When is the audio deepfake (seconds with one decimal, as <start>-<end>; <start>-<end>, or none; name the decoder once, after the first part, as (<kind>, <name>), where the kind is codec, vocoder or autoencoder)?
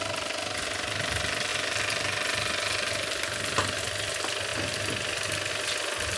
none